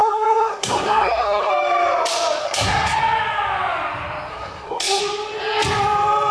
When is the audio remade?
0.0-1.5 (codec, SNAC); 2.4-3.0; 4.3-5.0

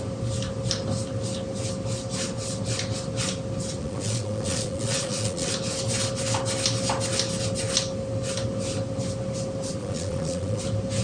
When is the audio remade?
3.8-5.5 (vocoder, Vocos); 9.8-10.6

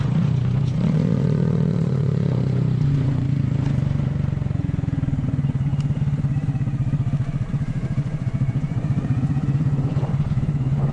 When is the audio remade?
0.0-5.7 (vocoder, Vocos); 7.5-10.9

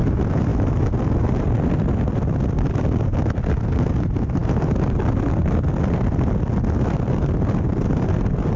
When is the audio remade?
none

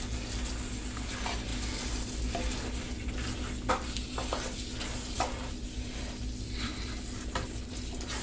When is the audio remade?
none